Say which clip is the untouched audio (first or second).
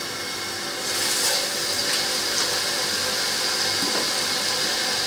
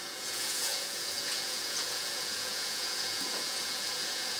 first